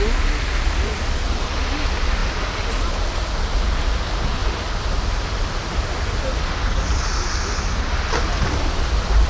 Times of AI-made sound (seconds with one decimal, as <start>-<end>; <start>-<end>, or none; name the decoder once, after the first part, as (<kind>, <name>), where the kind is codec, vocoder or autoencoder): none